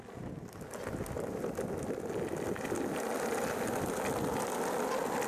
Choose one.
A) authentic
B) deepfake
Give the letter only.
A